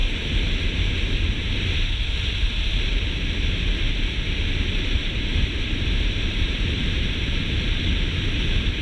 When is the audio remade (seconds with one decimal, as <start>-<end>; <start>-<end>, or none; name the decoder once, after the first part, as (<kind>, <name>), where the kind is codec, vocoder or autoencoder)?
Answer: 0.0-1.5 (vocoder, BigVGAN v2); 2.3-3.1; 5.0-7.8